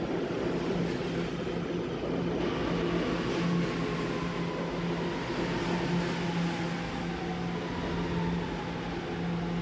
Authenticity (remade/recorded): recorded